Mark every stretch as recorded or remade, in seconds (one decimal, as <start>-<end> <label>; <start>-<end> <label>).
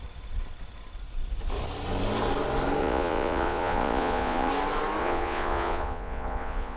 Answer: 0.0-2.8 recorded; 2.8-4.5 remade; 4.5-5.0 recorded; 5.0-6.8 remade